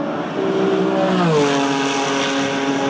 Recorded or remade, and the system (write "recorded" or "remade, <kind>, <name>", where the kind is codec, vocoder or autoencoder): recorded